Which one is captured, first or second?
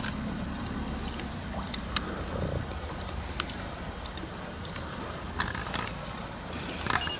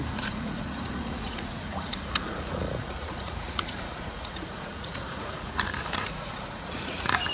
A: first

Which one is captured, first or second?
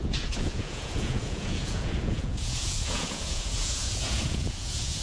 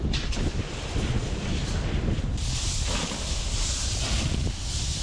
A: second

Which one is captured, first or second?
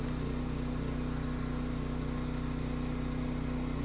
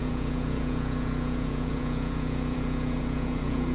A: first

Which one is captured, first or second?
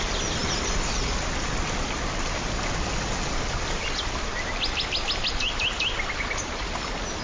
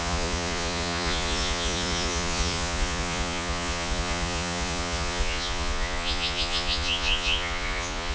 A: first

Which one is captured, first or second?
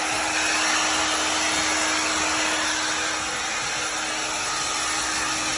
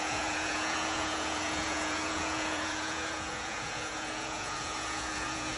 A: first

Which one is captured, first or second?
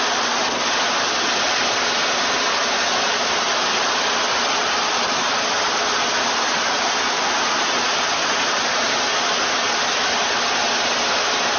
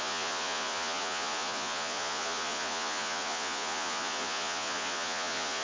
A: first